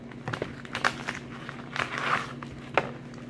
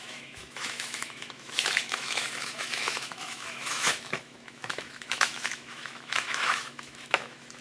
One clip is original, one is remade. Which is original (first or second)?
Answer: first